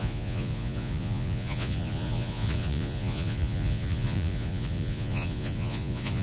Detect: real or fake fake